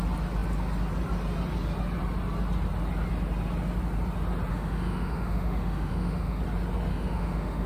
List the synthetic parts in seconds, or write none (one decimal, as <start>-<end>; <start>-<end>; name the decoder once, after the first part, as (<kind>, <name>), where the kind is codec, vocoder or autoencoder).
4.5-6.4 (autoencoder, DAC-VAE); 6.9-7.7